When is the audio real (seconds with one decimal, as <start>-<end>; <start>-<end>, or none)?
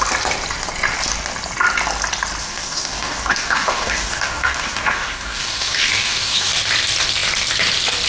0.0-2.4; 6.5-8.1